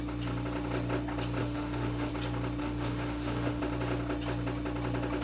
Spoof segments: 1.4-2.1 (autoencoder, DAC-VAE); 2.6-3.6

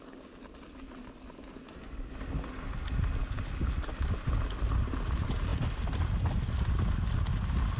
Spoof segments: none

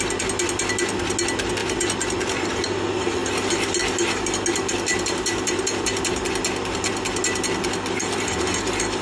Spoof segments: 1.6-2.5 (vocoder, BigVGAN v2); 4.9-6.0

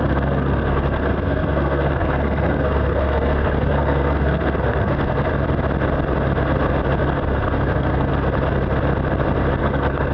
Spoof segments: 0.0-5.3 (codec, SNAC); 7.2-8.1; 9.6-10.1

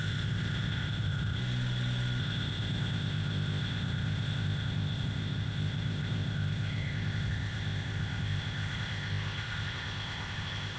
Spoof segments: 0.0-1.4 (codec, ZipCodec); 2.2-10.8

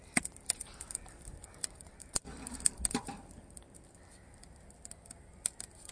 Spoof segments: 0.0-4.2 (vocoder, BigVGAN v2)

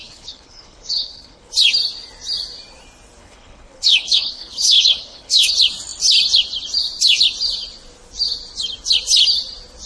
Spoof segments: 0.0-1.5 (codec, HILCodec); 3.2-5.5

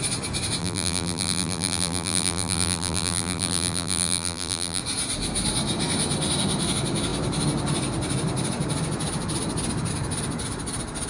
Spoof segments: 0.6-4.8 (vocoder, BigVGAN v2)